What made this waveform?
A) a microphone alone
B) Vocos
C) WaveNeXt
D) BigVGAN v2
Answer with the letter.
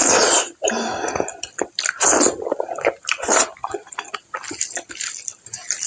A